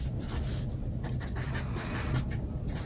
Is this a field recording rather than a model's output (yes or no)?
yes